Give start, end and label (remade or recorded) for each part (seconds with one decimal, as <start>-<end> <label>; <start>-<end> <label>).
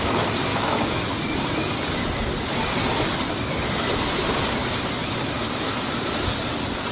0.0-0.5 recorded; 0.5-1.1 remade; 1.1-6.9 recorded